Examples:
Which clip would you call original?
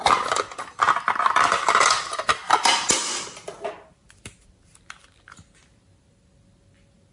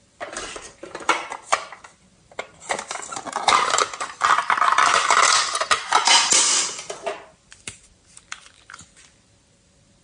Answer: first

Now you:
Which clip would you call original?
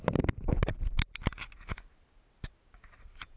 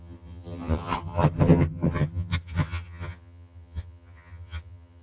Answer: first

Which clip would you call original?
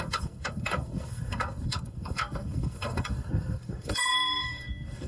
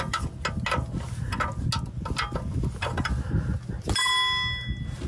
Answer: second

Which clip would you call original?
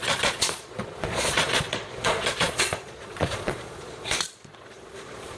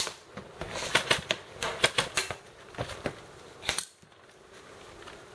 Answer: second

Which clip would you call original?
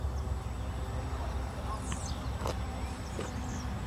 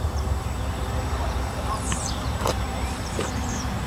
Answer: first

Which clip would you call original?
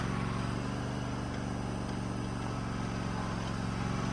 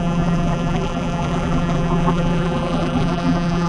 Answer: first